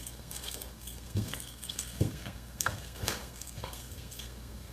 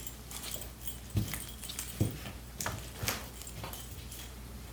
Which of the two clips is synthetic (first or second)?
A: first